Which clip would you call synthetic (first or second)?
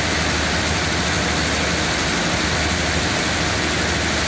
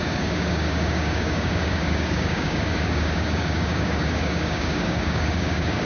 second